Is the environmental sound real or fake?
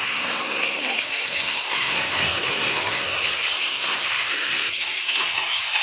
fake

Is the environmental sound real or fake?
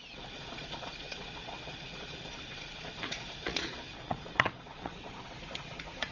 fake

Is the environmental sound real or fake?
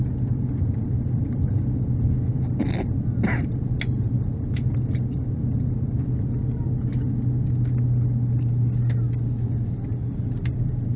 real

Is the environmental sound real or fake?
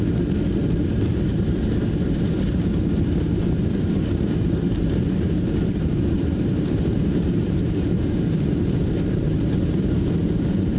fake